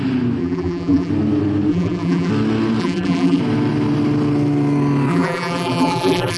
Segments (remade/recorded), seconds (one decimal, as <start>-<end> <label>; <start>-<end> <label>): 0.0-0.4 recorded; 0.4-1.1 remade; 1.1-1.7 recorded; 1.7-2.3 remade; 2.3-2.8 recorded; 2.8-3.4 remade; 3.4-5.1 recorded; 5.1-6.4 remade